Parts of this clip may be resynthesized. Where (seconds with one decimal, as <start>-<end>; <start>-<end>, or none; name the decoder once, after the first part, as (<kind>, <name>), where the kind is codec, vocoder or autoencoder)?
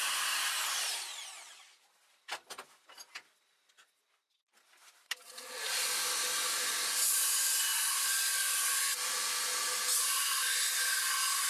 none